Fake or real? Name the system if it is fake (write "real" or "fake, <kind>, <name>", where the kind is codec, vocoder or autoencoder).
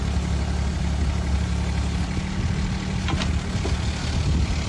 real